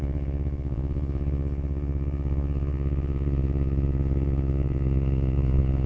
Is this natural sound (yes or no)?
no